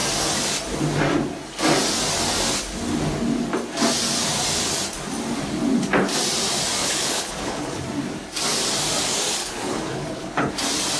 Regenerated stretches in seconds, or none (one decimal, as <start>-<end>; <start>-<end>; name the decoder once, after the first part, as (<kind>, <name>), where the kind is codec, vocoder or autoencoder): 6.8-7.8 (codec, HILCodec); 9.4-10.5